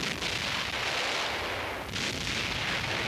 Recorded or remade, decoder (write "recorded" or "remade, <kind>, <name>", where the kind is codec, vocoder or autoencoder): recorded